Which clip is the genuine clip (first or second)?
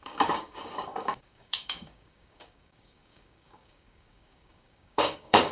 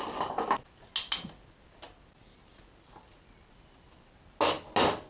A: second